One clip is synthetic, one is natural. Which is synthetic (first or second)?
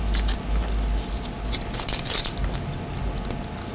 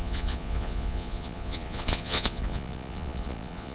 second